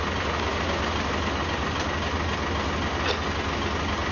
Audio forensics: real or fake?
real